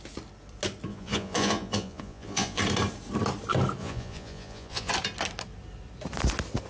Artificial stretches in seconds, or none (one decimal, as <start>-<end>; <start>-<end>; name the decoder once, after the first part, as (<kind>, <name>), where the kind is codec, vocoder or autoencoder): 0.9-2.6 (vocoder, Vocos); 3.8-4.9